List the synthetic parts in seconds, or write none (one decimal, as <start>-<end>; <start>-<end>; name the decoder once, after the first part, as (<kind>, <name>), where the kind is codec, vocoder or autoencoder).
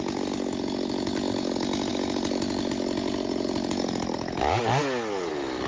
none